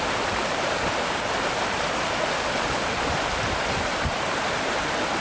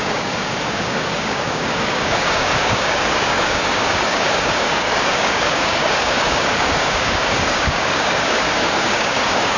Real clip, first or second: first